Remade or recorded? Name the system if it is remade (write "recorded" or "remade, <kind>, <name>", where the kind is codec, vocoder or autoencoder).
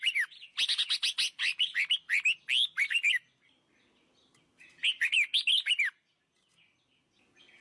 recorded